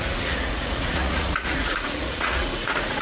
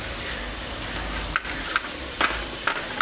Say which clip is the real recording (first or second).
second